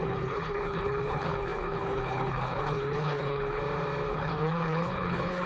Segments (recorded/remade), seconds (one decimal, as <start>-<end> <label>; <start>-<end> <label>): 0.0-3.6 remade; 3.6-4.1 recorded; 4.1-5.5 remade